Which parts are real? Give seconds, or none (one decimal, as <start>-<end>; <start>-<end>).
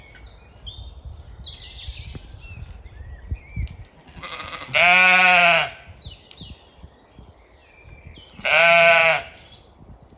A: 0.0-10.2